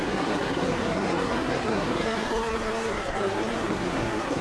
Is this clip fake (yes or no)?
yes